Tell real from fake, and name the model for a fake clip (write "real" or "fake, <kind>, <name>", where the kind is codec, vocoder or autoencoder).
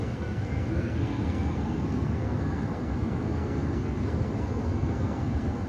fake, codec, SNAC